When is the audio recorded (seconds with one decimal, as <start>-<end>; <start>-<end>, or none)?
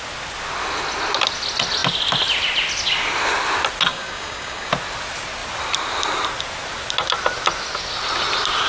0.0-3.9; 4.7-8.7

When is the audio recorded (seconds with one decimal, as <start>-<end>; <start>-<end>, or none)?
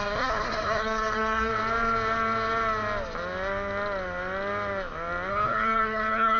1.5-5.3